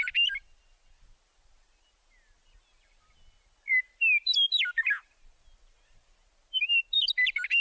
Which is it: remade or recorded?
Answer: recorded